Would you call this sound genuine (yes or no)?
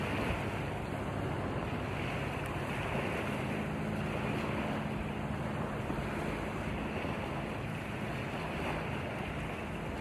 yes